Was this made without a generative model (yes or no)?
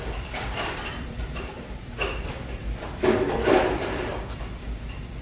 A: no